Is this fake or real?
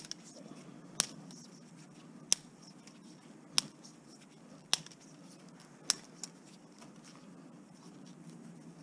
real